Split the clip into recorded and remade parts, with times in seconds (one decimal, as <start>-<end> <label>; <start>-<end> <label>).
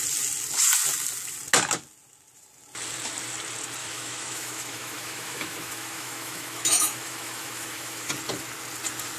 0.0-3.8 recorded; 3.8-8.1 remade; 8.1-9.2 recorded